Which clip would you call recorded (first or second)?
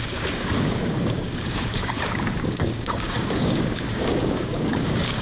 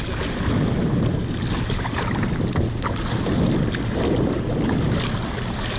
second